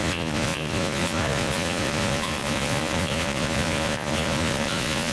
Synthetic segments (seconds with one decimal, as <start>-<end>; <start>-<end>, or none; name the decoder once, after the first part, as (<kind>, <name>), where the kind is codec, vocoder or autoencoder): 0.0-5.1 (vocoder, Vocos)

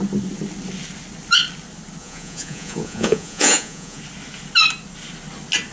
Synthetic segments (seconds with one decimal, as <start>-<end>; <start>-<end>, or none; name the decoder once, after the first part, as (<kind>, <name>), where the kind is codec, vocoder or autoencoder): 2.0-4.0 (vocoder, Vocos)

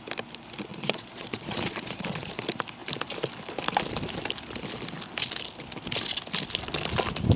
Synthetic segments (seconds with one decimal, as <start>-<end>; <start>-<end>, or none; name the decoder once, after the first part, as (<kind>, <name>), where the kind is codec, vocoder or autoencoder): 0.7-2.3 (vocoder, Vocos)

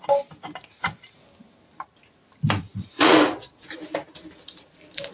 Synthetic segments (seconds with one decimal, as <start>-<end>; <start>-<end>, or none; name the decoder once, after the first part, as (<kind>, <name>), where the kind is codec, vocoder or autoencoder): 2.7-3.3 (vocoder, Vocos)

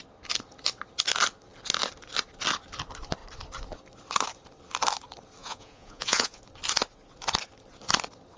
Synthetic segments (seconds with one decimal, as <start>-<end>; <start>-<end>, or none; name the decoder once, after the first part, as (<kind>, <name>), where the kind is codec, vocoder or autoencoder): 5.4-6.4 (vocoder, Vocos)

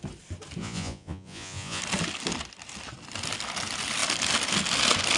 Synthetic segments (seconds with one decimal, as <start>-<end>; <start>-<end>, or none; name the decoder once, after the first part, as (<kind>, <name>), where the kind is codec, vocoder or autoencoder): 0.6-1.8 (vocoder, Vocos)